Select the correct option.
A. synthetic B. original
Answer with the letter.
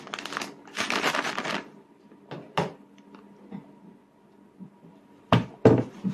B